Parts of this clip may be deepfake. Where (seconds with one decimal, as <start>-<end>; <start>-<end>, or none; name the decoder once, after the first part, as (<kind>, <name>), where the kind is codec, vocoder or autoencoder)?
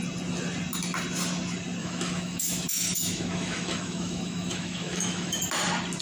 1.8-5.4 (autoencoder, DAC-VAE)